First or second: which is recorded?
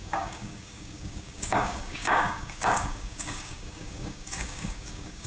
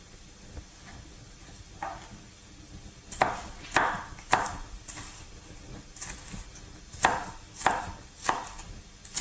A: second